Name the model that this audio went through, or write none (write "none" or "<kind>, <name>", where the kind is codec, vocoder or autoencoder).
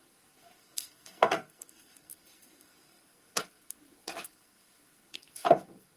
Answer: codec, SNAC